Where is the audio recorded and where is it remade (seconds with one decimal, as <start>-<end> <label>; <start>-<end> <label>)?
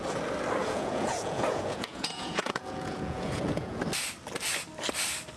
0.0-0.6 recorded; 0.6-3.8 remade; 3.8-5.4 recorded